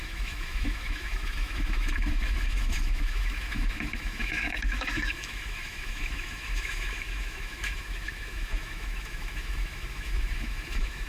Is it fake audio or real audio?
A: fake